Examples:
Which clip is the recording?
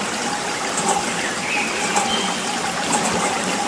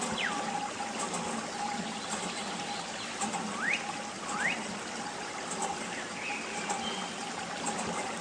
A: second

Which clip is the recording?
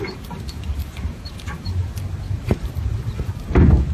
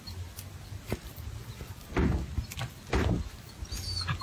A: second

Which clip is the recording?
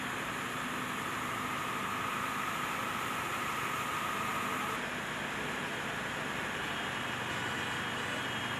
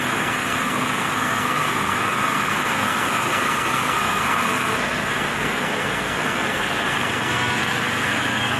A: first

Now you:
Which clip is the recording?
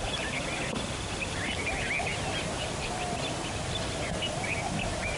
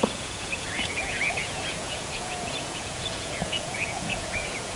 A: first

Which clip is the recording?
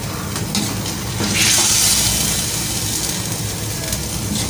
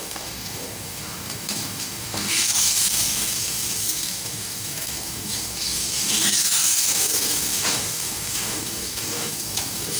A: first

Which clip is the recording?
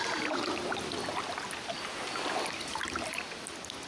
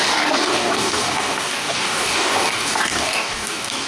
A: first